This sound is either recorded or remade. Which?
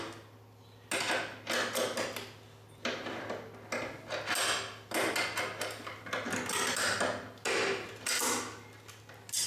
recorded